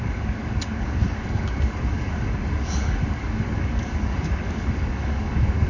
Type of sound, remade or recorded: remade